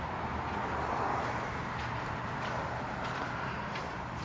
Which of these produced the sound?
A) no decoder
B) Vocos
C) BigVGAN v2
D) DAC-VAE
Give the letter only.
A